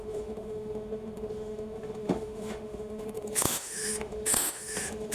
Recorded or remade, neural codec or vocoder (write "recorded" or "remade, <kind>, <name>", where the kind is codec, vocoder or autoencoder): remade, autoencoder, DAC-VAE